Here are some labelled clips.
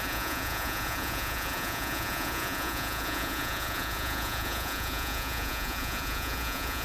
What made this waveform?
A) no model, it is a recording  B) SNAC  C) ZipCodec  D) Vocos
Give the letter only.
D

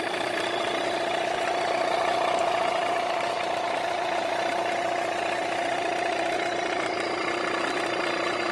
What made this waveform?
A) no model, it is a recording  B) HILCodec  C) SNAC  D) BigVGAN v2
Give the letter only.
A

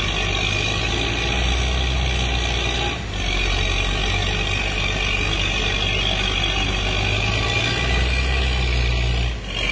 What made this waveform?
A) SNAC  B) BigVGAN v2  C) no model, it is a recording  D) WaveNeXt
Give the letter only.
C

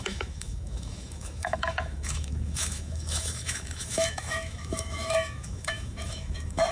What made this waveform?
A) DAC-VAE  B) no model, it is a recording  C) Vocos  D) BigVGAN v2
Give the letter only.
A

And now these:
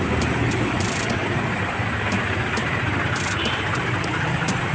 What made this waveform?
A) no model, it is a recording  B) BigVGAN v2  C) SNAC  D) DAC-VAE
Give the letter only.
B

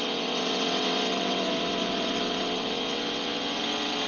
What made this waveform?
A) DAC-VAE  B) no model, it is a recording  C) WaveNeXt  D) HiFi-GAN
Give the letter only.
C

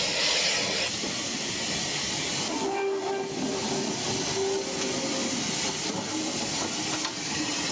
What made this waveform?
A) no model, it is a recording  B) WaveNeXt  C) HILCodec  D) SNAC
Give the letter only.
A